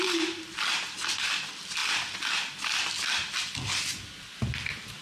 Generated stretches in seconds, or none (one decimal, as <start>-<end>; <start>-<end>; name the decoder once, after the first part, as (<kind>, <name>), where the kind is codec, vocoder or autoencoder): none

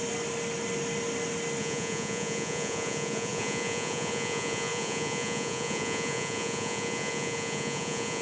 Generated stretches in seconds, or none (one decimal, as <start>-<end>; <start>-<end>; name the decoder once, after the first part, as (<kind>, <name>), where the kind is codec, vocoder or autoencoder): 1.6-8.2 (vocoder, Vocos)